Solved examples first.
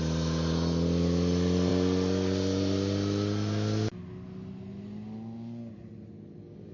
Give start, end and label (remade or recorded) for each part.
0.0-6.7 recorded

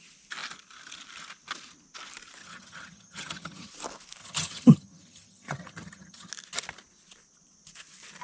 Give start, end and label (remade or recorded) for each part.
0.0-2.4 recorded; 2.4-3.7 remade; 3.7-4.2 recorded; 4.2-6.3 remade; 6.3-8.2 recorded

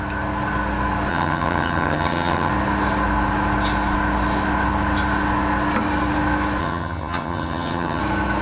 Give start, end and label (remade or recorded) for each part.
0.0-1.1 recorded; 1.1-2.5 remade; 2.5-6.6 recorded; 6.6-8.0 remade; 8.0-8.4 recorded

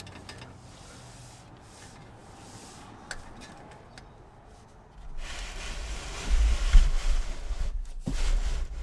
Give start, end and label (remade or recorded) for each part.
0.0-8.8 recorded

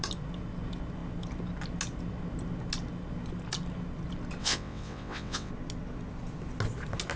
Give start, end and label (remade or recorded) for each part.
0.0-4.4 recorded; 4.4-5.5 remade; 5.5-7.2 recorded

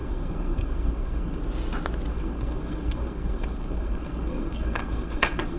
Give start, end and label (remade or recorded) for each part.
0.0-1.4 remade; 1.4-2.1 recorded; 2.1-5.6 remade

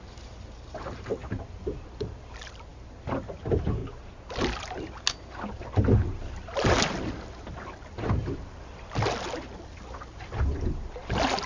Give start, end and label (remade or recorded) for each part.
0.0-11.5 recorded